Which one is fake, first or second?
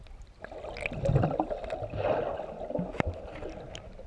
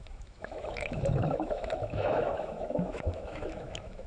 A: second